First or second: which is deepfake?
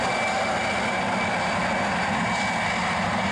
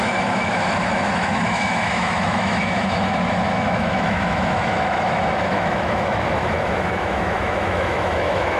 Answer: second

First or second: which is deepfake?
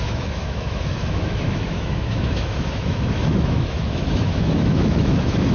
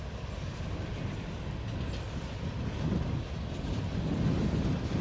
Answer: first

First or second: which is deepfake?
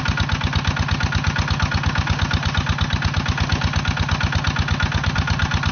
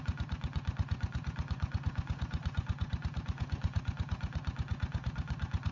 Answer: second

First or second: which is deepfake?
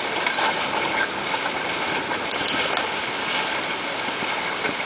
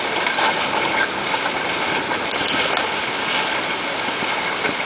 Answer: first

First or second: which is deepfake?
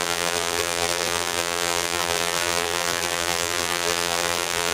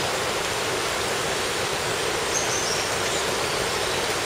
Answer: first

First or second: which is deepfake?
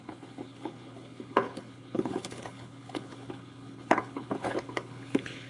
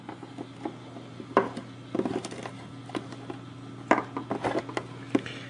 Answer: first